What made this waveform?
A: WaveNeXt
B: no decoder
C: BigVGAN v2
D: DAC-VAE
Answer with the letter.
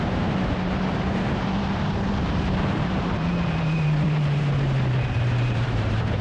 C